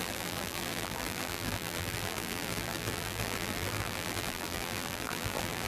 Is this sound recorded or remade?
remade